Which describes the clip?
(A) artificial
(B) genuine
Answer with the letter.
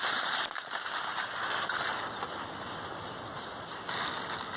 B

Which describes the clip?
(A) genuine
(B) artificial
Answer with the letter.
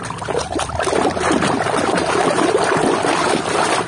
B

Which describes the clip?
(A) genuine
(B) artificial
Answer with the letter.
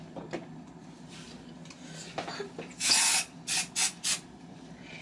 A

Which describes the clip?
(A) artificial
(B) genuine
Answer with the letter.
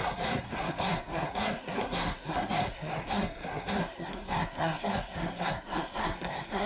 A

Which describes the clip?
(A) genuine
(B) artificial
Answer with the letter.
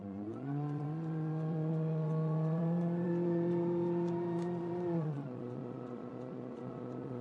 B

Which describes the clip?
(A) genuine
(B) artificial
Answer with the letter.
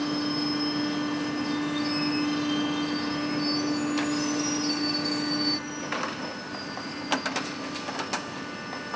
A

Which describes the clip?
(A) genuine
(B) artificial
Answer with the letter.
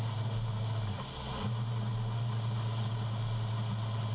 A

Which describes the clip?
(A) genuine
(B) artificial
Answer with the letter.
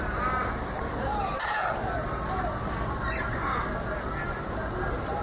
A